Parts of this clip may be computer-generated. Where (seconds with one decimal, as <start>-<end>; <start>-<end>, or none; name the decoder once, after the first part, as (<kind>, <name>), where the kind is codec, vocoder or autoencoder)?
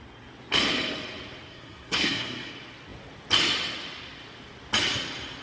1.5-2.5 (codec, SNAC)